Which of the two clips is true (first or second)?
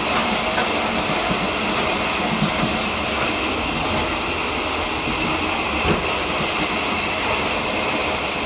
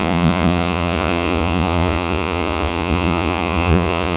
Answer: first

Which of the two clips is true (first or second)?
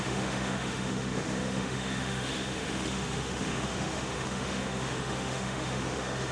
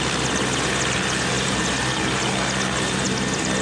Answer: second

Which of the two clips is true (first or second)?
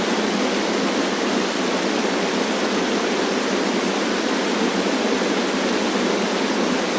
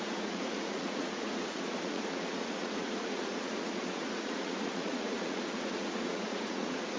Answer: first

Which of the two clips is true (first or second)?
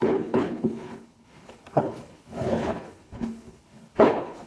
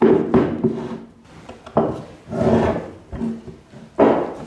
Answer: second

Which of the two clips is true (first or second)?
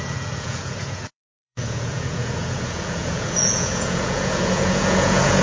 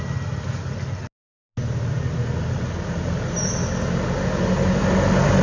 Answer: second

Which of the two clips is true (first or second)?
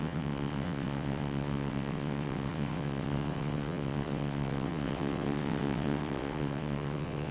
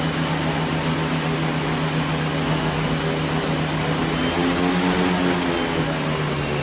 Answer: second